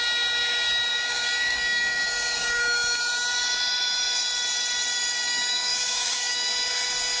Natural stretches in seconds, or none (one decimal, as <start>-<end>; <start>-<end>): 0.0-0.9; 3.0-5.7; 6.3-7.2